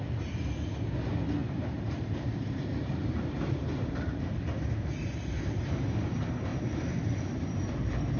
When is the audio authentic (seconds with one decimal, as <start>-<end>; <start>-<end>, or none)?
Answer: 0.0-1.4; 5.9-6.5; 7.6-8.2